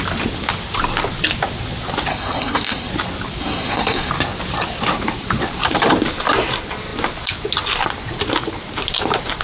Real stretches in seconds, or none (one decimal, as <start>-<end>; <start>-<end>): 0.0-2.1; 2.9-3.4; 4.1-9.4